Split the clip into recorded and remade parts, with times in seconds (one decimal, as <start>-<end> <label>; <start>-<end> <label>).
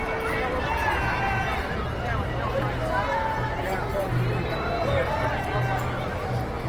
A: 0.0-4.0 recorded; 4.0-5.2 remade; 5.2-6.7 recorded